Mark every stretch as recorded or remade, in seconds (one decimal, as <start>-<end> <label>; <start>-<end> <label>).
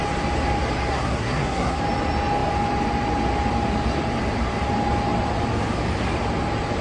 0.0-0.9 recorded; 0.9-1.8 remade; 1.8-6.8 recorded